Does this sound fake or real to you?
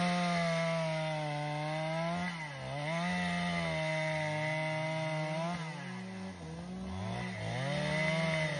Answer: real